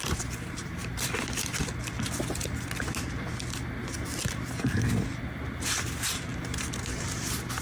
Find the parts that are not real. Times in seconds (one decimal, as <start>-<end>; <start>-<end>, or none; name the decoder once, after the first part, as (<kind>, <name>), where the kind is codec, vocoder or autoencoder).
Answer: 0.0-0.8 (vocoder, BigVGAN v2); 5.3-7.6